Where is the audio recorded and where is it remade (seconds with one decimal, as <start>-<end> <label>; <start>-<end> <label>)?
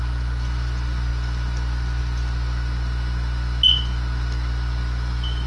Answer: 0.0-5.5 recorded